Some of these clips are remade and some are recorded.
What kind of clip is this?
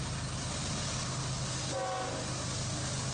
recorded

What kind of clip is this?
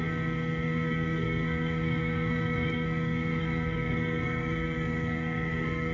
remade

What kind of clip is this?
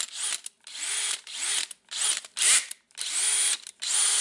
recorded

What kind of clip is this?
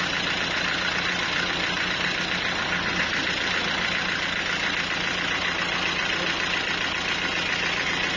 recorded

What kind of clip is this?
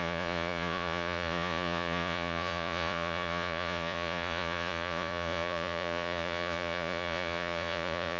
remade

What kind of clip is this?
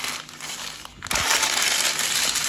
recorded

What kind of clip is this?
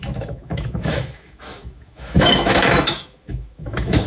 remade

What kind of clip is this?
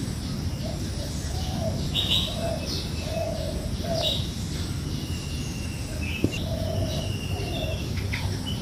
recorded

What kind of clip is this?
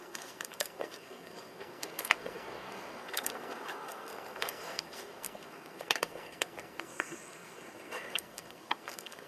remade